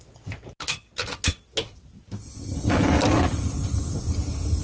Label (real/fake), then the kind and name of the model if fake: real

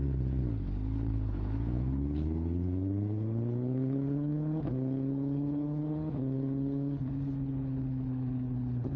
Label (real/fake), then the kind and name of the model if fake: fake, codec, HILCodec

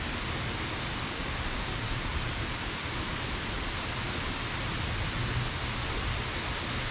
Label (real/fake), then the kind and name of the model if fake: real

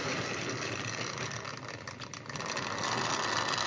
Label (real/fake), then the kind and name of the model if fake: real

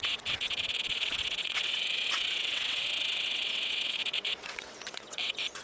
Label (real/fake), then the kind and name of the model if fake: fake, vocoder, WaveNeXt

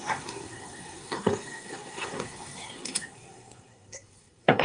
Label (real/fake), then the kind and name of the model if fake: fake, codec, SNAC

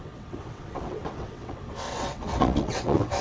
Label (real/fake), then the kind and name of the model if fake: fake, vocoder, WaveNeXt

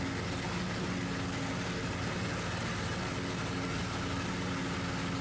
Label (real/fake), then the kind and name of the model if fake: real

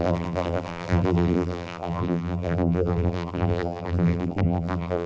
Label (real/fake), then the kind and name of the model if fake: fake, vocoder, BigVGAN v2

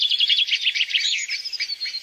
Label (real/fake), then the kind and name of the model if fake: fake, vocoder, BigVGAN v2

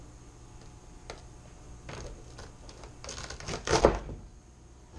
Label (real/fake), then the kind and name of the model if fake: real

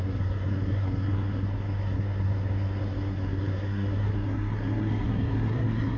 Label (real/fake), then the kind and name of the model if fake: fake, codec, SNAC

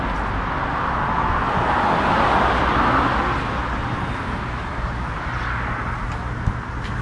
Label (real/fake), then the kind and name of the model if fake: real